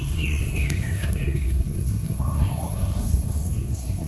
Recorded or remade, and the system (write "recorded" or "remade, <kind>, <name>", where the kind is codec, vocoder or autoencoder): remade, codec, SNAC